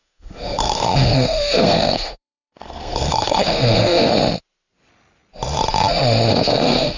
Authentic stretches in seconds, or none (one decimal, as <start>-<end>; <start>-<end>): 4.1-6.3